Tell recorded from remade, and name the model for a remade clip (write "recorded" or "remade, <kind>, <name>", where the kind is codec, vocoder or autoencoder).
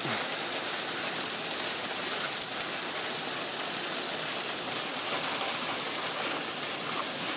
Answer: recorded